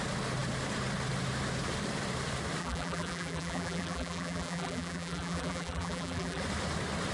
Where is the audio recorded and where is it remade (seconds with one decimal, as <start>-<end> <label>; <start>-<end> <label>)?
0.0-2.6 recorded; 2.6-6.4 remade; 6.4-7.1 recorded

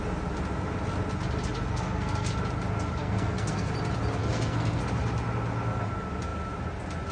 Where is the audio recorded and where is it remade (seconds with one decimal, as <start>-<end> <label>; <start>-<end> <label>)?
0.0-1.7 recorded; 1.7-2.3 remade; 2.3-3.0 recorded; 3.0-3.7 remade; 3.7-4.2 recorded; 4.2-4.8 remade; 4.8-7.1 recorded

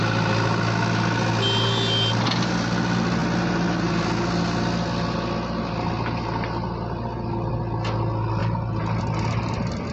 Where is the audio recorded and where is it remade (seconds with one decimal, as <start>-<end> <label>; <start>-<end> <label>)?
0.0-9.9 recorded

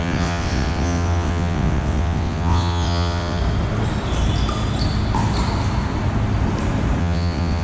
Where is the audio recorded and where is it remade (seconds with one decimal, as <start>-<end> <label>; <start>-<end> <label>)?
0.0-3.4 remade; 3.4-7.0 recorded; 7.0-7.6 remade

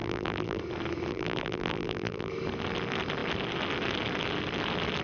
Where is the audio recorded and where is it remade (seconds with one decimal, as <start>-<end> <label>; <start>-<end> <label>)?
0.0-0.6 remade; 0.6-1.1 recorded; 1.1-2.3 remade; 2.3-5.0 recorded